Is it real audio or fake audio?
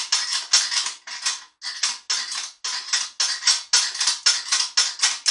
real